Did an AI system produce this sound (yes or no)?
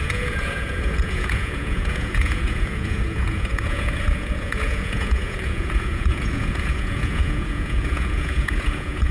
yes